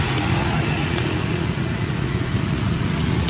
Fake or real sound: fake